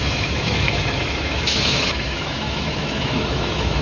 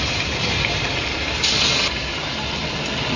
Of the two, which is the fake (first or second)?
first